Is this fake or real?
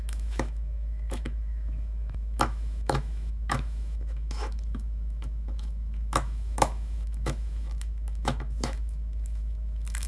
fake